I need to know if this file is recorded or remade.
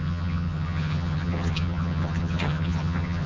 remade